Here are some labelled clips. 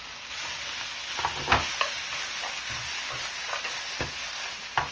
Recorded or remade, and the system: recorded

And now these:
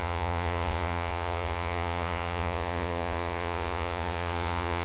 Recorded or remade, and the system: remade, vocoder, Vocos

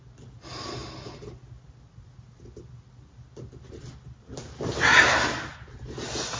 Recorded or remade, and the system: recorded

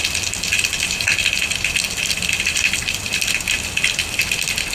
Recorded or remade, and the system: recorded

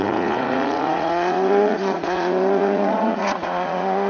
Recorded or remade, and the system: remade, vocoder, Vocos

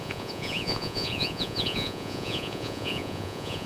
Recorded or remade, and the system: remade, vocoder, Vocos